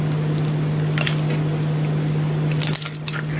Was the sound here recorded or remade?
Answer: recorded